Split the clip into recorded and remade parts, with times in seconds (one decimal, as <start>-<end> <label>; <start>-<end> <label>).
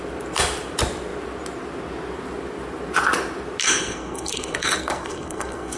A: 0.0-3.6 recorded; 3.6-5.8 remade